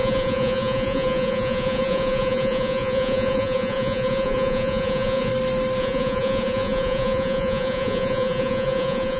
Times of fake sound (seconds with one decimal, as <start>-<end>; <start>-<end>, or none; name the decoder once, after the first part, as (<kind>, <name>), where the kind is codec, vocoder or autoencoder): 0.0-5.3 (vocoder, Vocos); 5.8-9.2